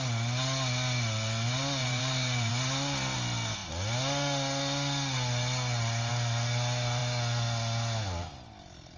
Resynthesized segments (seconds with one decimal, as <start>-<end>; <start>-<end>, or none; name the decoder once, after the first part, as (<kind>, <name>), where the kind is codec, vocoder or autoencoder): 1.8-2.5 (vocoder, BigVGAN v2)